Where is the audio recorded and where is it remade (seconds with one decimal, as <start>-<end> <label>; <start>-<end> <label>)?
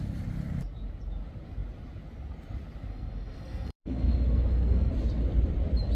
0.0-2.9 recorded; 2.9-4.9 remade; 4.9-6.0 recorded